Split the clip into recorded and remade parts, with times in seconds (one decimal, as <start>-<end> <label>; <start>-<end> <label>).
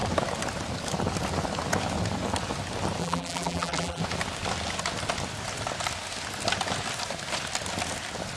0.0-3.0 recorded; 3.0-4.0 remade; 4.0-8.4 recorded